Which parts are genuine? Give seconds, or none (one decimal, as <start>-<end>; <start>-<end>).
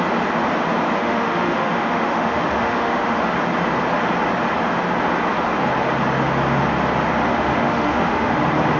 0.0-1.0; 3.2-7.3; 8.3-8.8